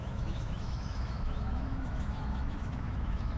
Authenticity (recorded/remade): remade